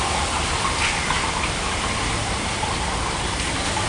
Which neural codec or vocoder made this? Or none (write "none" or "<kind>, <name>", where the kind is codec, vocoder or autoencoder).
none